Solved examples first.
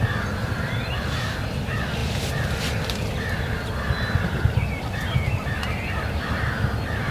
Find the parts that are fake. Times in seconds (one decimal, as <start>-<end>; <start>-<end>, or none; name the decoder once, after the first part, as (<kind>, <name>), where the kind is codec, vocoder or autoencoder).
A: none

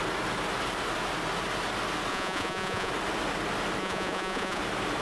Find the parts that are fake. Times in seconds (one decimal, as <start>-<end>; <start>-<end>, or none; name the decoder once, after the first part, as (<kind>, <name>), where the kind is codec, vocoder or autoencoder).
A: 2.1-2.9 (vocoder, Vocos); 3.8-4.6

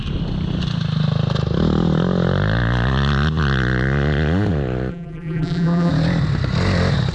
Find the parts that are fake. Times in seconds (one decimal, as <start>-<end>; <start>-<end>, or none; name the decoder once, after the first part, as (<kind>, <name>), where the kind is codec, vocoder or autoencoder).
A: 4.9-5.9 (vocoder, BigVGAN v2)